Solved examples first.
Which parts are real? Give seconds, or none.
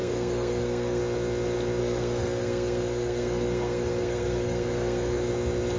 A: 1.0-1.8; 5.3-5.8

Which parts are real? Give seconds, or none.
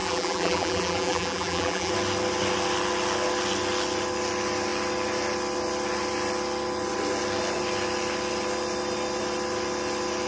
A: 1.9-10.3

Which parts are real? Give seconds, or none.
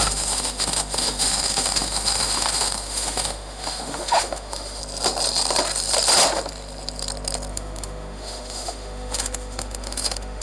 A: 4.8-7.5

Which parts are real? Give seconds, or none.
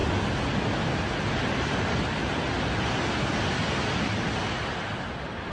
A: 0.0-5.5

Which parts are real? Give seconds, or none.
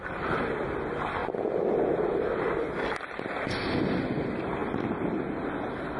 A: 0.0-6.0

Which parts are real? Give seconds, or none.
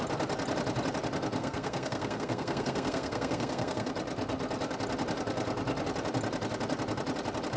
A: 0.0-1.4; 3.9-7.6